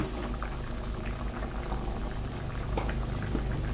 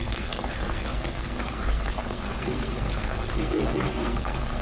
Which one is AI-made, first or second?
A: second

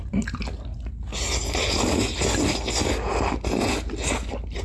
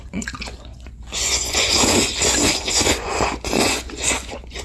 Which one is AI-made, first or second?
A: second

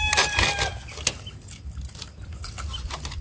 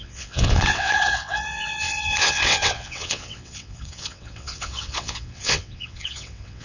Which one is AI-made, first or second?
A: second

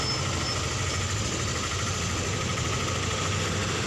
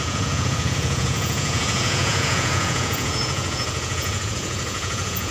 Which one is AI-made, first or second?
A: second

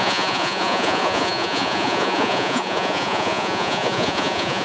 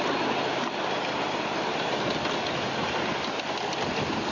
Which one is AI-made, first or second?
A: first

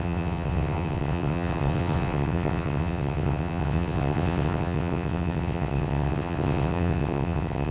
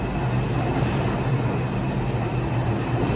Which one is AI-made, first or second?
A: first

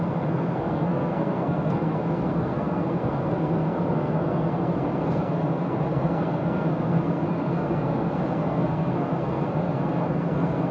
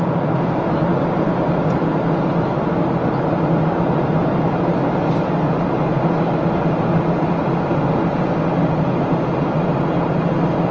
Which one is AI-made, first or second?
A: first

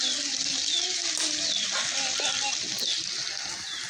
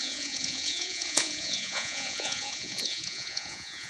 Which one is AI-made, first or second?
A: second